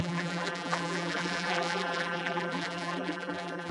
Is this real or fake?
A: fake